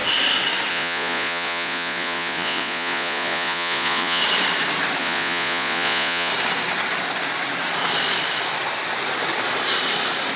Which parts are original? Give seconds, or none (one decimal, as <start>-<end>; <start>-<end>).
0.0-0.7; 4.2-5.0; 6.3-10.4